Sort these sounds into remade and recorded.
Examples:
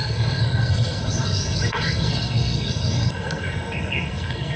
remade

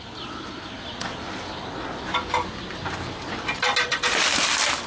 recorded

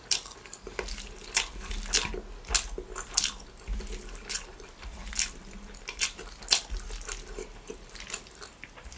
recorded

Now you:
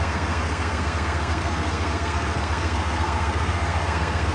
remade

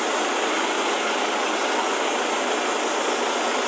recorded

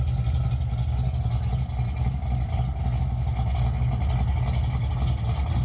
recorded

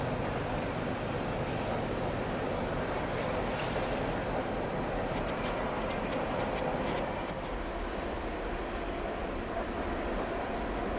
recorded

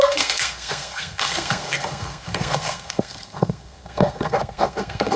remade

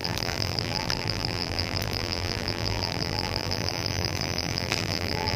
remade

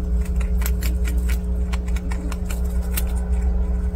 recorded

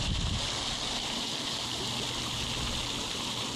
recorded